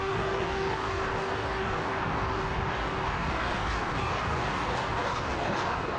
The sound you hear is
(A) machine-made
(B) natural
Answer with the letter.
A